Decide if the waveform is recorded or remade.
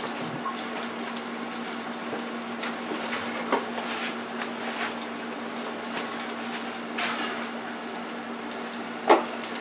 recorded